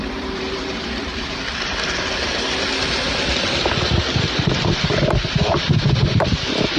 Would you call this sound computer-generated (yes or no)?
yes